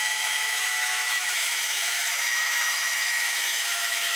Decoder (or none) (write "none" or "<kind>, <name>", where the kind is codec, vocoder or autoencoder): autoencoder, DAC-VAE